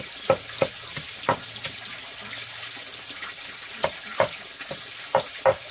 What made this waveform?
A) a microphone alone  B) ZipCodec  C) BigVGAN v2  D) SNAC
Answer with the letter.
A